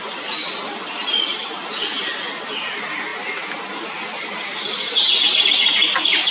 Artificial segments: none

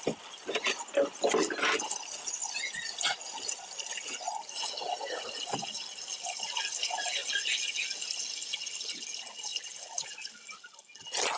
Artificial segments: none

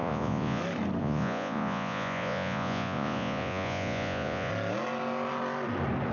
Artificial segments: 0.0-0.6 (vocoder, Vocos); 1.0-4.5